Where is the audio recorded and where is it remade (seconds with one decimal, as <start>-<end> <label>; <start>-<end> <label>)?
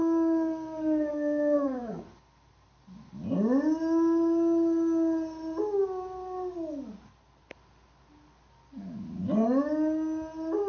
0.0-2.0 remade; 2.0-10.7 recorded